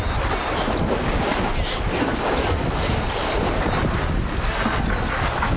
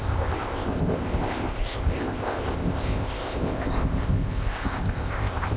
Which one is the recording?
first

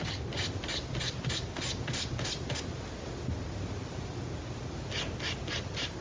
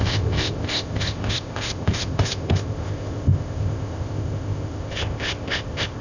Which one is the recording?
first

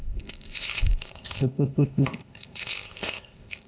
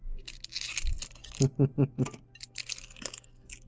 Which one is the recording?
second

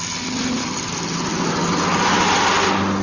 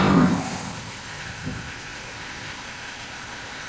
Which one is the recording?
first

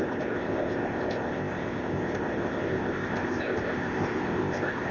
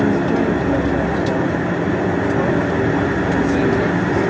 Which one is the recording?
second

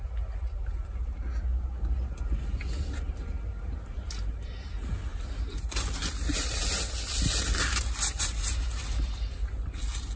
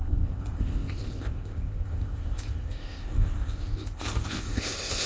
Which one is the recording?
first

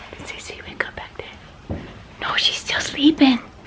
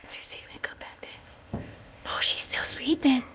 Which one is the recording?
first